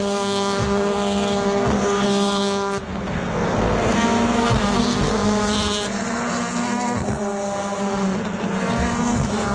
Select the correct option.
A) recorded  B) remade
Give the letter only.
B